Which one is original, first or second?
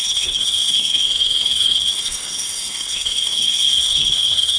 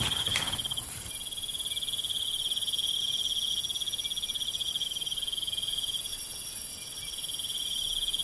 second